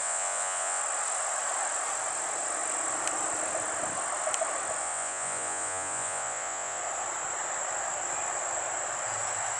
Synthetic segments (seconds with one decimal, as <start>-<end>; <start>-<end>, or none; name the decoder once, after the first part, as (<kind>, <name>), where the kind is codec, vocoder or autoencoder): 0.0-0.8 (vocoder, Vocos); 4.8-6.8